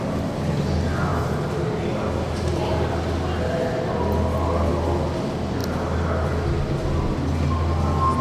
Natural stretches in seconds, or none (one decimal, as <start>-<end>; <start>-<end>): 0.0-8.2